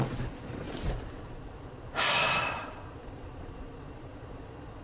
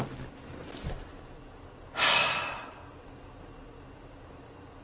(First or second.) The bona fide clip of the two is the second